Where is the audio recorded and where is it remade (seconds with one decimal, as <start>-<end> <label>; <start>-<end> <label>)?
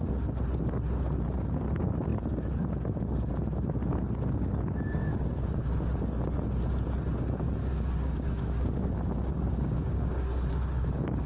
0.0-5.0 recorded; 5.0-5.6 remade; 5.6-7.6 recorded; 7.6-11.3 remade